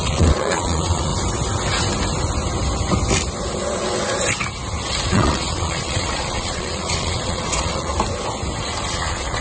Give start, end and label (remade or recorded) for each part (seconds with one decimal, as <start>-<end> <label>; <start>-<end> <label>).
0.0-1.1 remade; 1.1-5.1 recorded; 5.1-7.9 remade; 7.9-8.9 recorded; 8.9-9.4 remade